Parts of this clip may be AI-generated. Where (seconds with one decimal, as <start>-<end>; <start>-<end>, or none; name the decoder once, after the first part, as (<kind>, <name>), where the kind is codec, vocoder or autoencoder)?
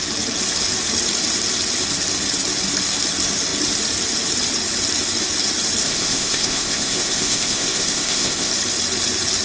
5.8-8.5 (codec, ZipCodec)